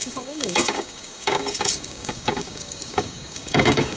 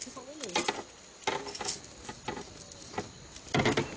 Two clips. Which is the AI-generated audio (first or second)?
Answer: first